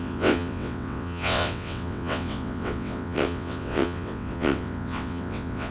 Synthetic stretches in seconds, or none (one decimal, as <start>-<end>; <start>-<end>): 0.0-5.7